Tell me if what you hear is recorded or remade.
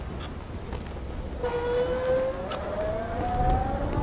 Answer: recorded